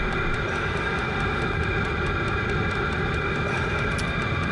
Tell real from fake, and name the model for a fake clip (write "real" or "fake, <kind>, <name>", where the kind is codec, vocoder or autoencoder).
real